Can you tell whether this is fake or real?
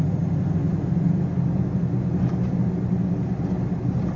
real